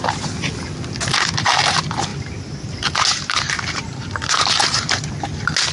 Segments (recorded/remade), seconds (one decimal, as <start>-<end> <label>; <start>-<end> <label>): 0.0-2.1 recorded; 2.1-5.1 remade; 5.1-5.7 recorded